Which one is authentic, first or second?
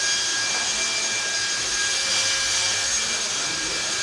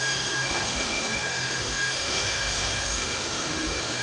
first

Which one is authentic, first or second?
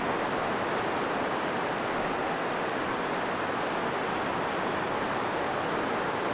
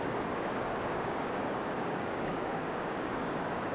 first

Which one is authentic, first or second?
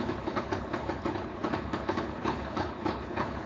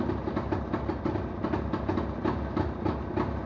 second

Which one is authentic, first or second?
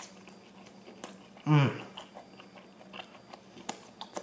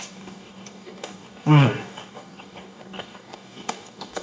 first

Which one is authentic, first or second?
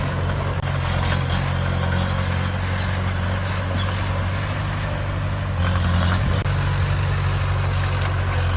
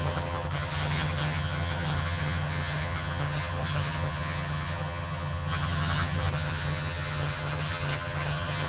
first